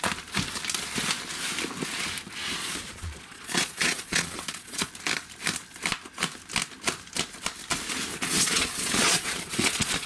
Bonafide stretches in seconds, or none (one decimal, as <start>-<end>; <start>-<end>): 0.0-2.6; 4.9-8.1